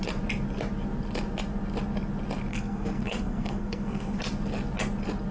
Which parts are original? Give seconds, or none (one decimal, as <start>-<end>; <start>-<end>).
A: 0.0-2.5; 4.2-5.3